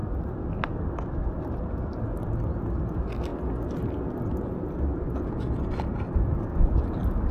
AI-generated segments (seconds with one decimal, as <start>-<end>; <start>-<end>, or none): none